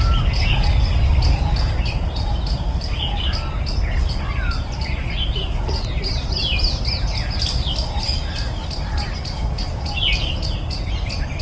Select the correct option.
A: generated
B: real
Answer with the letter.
B